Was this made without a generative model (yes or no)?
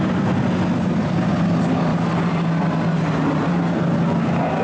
yes